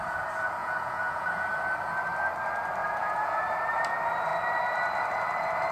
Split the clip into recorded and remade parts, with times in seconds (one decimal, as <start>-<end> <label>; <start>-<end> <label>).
0.0-0.6 recorded; 0.6-1.5 remade; 1.5-2.8 recorded; 2.8-3.4 remade; 3.4-5.7 recorded